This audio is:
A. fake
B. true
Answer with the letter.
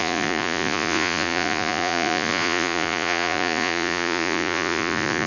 A